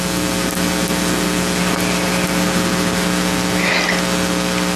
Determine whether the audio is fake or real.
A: real